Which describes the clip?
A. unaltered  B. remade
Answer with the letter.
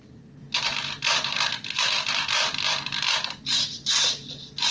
A